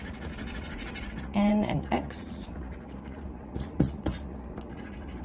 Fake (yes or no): yes